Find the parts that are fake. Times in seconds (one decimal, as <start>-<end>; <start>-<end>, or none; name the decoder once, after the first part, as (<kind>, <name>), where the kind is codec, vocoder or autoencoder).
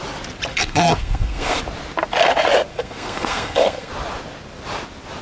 0.5-1.6 (codec, SNAC); 2.7-3.9